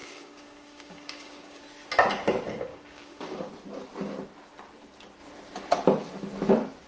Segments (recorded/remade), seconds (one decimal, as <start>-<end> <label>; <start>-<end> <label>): 0.0-1.6 remade; 1.6-2.7 recorded; 2.7-3.5 remade; 3.5-6.9 recorded